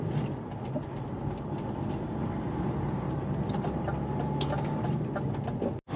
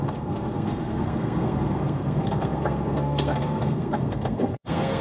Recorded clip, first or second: first